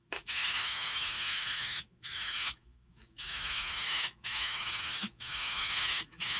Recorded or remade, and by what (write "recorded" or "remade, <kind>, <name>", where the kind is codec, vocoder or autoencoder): remade, autoencoder, DAC-VAE